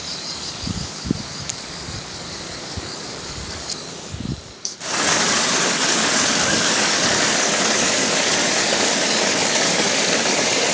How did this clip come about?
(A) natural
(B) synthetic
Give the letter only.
B